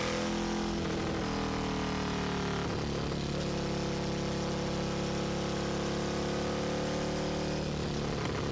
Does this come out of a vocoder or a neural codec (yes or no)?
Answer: no